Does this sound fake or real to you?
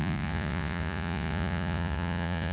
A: fake